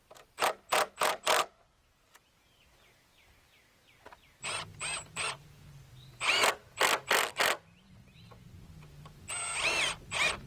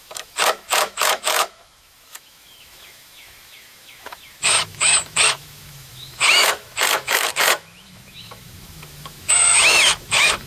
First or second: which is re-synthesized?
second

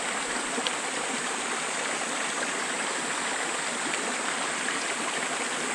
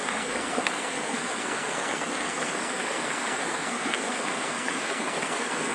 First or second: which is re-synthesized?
second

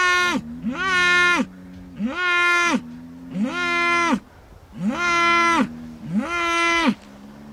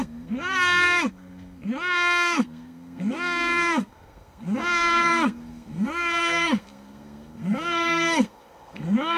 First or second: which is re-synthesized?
second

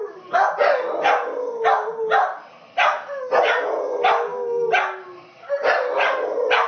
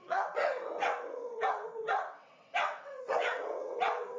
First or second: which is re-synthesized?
second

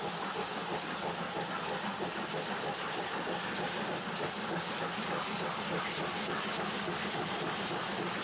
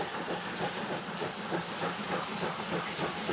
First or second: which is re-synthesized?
second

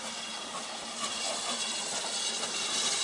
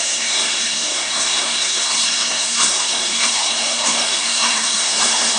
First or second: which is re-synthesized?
second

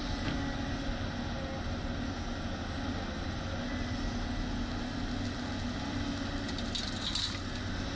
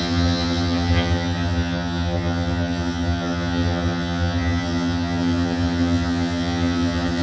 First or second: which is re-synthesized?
second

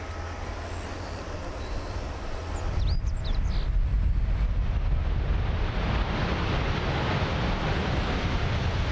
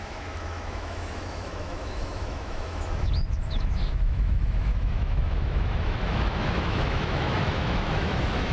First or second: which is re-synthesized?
second